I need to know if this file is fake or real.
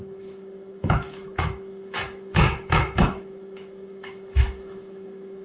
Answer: fake